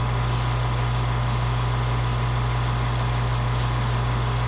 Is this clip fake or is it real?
real